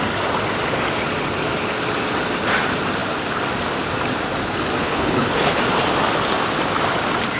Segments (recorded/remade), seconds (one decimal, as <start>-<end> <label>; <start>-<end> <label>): 0.0-4.8 recorded; 4.8-5.6 remade; 5.6-7.4 recorded